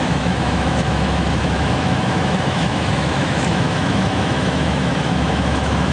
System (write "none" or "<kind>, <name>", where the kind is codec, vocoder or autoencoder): autoencoder, DAC-VAE